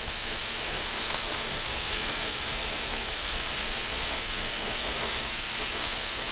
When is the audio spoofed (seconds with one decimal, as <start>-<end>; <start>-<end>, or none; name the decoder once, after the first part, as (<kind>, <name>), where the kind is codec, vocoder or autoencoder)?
0.0-6.3 (codec, SNAC)